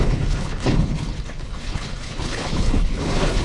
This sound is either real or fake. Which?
fake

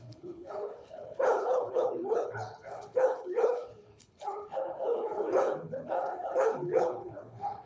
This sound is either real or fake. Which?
fake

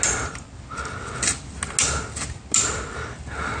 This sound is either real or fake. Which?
real